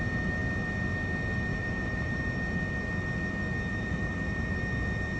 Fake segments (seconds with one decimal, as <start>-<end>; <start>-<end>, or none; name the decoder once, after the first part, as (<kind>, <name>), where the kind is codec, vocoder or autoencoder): 1.5-2.2 (vocoder, BigVGAN v2); 3.7-4.6